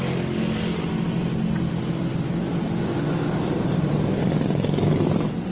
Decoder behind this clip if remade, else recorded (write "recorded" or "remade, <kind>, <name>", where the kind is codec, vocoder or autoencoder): recorded